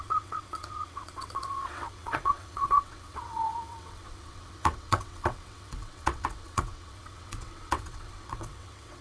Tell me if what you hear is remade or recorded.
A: remade